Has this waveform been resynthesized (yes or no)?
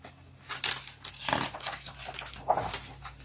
yes